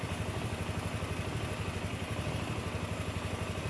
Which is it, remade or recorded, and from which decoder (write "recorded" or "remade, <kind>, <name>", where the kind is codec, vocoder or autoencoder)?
recorded